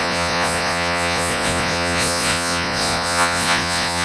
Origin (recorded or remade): remade